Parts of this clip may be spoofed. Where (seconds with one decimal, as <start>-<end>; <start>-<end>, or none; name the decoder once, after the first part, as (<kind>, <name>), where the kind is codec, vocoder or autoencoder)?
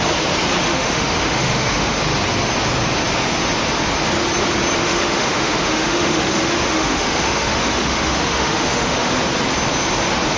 0.6-2.0 (autoencoder, DAC-VAE); 4.8-9.1